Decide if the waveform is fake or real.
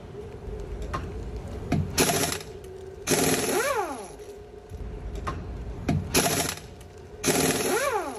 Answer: real